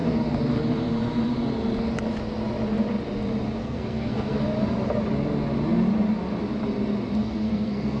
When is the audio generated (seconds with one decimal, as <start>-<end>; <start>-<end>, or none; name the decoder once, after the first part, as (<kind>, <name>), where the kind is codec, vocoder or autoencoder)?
3.6-4.4 (codec, SNAC); 7.2-8.0